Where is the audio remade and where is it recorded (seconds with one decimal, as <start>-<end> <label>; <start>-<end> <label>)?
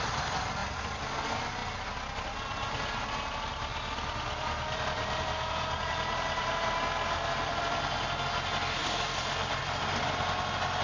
0.0-0.6 recorded; 0.6-1.1 remade; 1.1-3.7 recorded; 3.7-7.8 remade; 7.8-8.8 recorded; 8.8-9.6 remade; 9.6-10.8 recorded